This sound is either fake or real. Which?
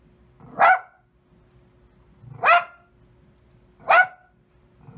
real